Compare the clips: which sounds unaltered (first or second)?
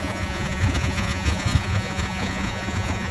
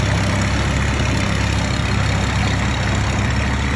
second